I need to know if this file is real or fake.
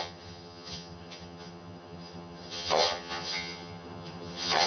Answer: fake